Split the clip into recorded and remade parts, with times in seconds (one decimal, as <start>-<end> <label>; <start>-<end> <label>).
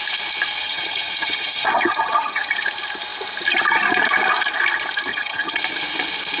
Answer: 0.0-0.6 recorded; 0.6-2.5 remade; 2.5-5.1 recorded; 5.1-5.6 remade; 5.6-6.4 recorded